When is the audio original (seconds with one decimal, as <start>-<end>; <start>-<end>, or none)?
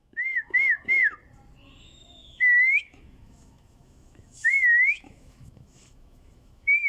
1.0-1.8